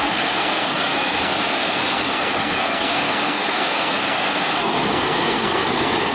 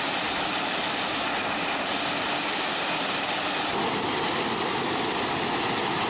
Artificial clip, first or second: first